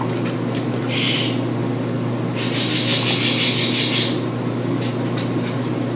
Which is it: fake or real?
real